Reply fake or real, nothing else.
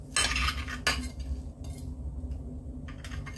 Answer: real